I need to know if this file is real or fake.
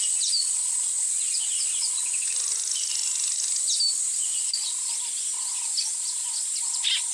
real